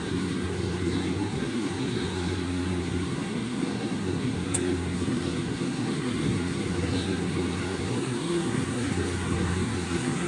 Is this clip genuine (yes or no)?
no